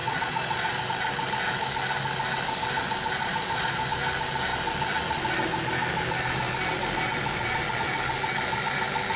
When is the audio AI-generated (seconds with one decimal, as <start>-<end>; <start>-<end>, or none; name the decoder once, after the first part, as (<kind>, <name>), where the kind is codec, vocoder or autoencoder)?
0.0-0.8 (vocoder, Vocos); 3.2-3.8